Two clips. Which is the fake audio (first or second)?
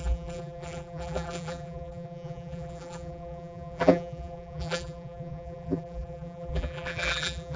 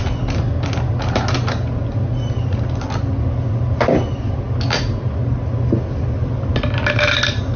first